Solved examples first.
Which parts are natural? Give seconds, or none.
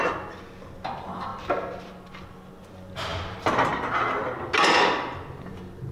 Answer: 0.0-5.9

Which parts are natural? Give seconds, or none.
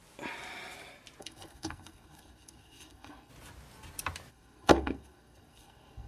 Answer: 0.0-1.2; 3.3-4.3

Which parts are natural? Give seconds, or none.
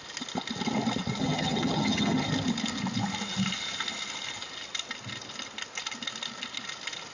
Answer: 0.0-1.2; 2.3-7.1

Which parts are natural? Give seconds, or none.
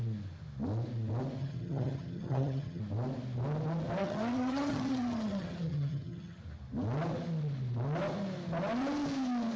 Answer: 0.0-1.4; 2.8-4.0; 6.4-9.6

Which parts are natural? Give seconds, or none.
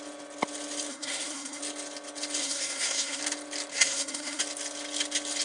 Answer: 0.0-0.9; 1.6-2.4; 3.2-3.7; 4.4-5.4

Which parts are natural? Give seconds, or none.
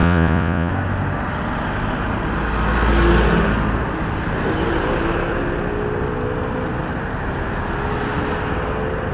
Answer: 0.7-9.1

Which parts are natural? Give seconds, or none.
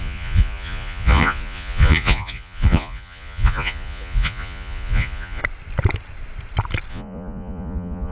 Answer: 5.4-6.9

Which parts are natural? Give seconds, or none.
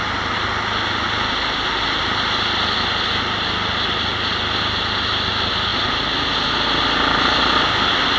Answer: 0.0-8.2